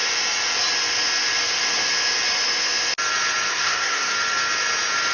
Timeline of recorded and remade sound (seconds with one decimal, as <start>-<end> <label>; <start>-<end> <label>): 0.0-3.5 recorded; 3.5-4.1 remade; 4.1-5.1 recorded